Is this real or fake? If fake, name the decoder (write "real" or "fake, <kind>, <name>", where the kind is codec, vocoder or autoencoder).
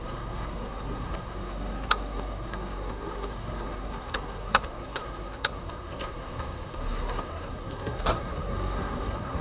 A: fake, codec, SNAC